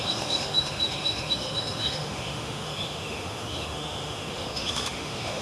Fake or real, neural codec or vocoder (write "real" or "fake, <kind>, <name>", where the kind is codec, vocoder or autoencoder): fake, autoencoder, DAC-VAE